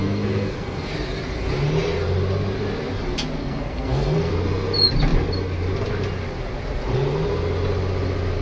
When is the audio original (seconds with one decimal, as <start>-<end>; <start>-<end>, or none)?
0.9-3.4; 4.3-8.4